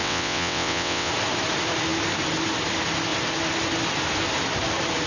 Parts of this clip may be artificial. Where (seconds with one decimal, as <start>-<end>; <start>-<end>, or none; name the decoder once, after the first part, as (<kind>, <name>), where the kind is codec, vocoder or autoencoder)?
0.0-1.1 (vocoder, WaveNeXt)